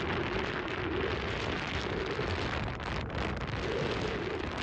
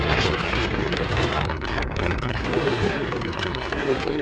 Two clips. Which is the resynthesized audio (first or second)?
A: second